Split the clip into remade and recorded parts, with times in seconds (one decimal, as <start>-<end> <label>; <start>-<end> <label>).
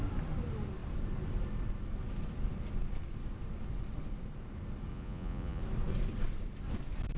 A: 0.0-4.9 recorded; 4.9-5.6 remade; 5.6-7.2 recorded